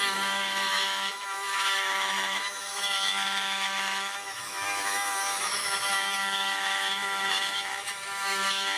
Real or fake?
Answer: fake